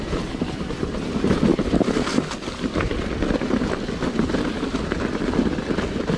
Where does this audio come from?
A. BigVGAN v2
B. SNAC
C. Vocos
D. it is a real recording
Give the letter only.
D